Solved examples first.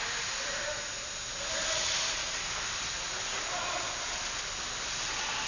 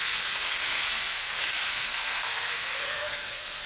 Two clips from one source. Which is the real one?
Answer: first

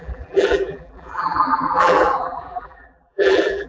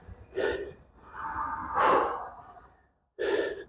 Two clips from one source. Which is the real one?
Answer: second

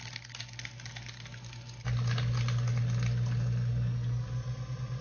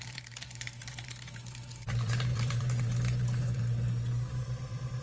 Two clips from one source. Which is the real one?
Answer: first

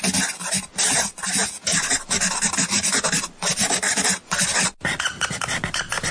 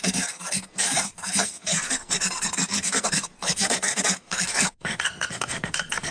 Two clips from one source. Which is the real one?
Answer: first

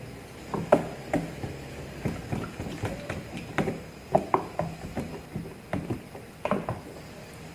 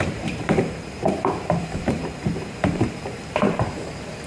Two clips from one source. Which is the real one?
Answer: first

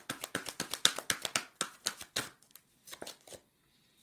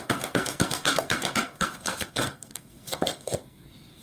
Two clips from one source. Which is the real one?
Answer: first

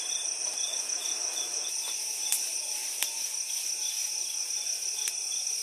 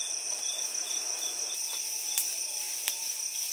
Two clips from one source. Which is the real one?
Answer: first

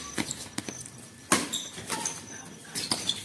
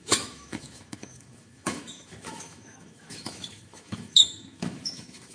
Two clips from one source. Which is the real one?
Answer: first